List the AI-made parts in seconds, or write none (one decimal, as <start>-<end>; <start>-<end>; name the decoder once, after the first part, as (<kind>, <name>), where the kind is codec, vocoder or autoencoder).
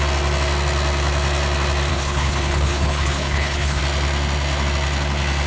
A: 1.9-3.8 (codec, HILCodec)